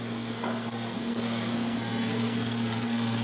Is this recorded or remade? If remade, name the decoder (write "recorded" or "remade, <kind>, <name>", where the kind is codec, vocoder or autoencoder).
remade, codec, SNAC